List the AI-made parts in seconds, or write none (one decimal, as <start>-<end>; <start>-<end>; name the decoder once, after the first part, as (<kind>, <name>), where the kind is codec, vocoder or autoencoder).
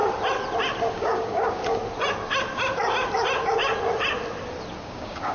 0.9-1.6 (codec, DAC); 4.8-5.3